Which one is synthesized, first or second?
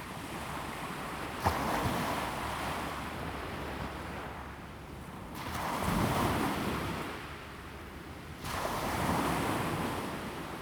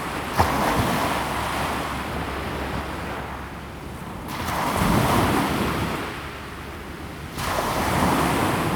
first